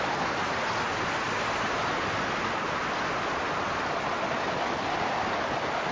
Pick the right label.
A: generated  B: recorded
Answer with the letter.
B